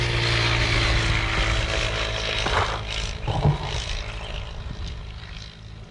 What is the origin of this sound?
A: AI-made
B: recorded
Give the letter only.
B